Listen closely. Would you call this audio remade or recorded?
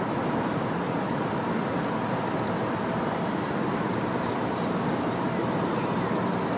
remade